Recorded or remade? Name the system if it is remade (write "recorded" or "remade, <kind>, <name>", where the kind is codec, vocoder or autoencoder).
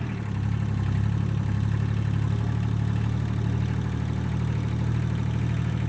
recorded